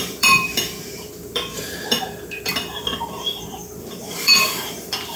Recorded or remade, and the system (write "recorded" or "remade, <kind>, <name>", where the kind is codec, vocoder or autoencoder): remade, vocoder, BigVGAN v2